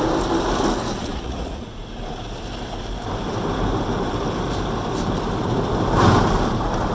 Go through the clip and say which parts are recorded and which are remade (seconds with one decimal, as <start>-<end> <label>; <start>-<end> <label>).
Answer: 0.0-1.0 recorded; 1.0-1.8 remade; 1.8-6.9 recorded